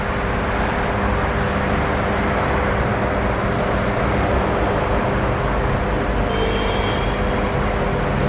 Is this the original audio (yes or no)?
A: yes